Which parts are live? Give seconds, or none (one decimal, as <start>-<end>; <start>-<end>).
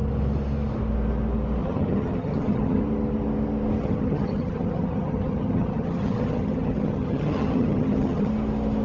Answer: 0.0-1.6; 2.8-3.8; 8.3-8.8